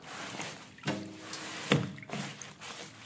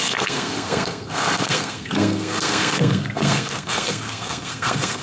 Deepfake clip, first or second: second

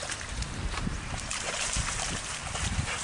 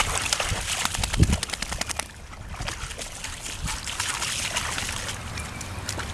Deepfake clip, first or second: first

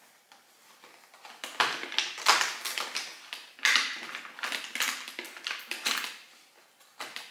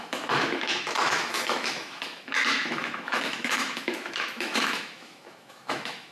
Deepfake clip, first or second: second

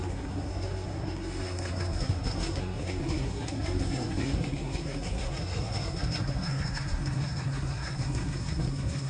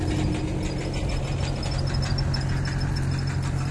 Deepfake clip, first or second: first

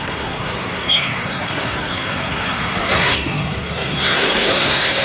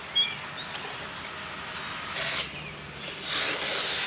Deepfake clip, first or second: first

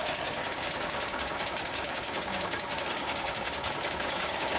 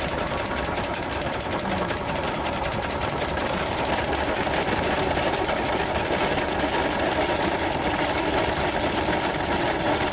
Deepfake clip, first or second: first